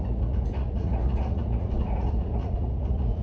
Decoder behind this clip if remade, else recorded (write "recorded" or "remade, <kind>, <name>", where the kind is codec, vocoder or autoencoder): remade, vocoder, Vocos